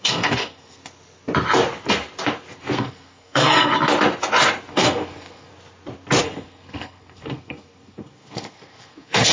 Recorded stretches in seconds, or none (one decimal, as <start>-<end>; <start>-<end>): 0.8-2.6; 3.7-4.7; 5.5-6.2